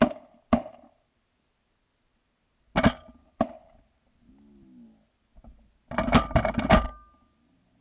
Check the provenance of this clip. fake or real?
real